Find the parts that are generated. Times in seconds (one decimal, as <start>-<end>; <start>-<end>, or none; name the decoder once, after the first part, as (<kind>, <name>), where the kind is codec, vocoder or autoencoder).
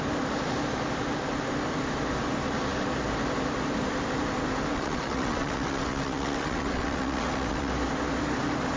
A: 4.7-7.7 (vocoder, WaveNeXt)